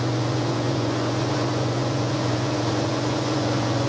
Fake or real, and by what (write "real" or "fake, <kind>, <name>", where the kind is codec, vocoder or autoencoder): fake, vocoder, Vocos